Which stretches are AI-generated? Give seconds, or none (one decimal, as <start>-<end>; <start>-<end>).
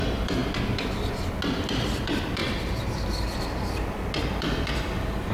0.0-0.4; 1.7-2.4; 4.3-5.3